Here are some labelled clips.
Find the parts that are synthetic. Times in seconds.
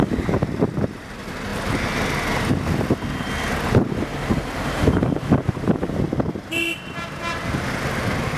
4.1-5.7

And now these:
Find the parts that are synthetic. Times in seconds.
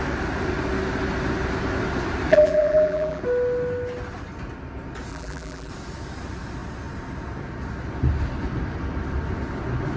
2.3-3.2; 5.1-5.7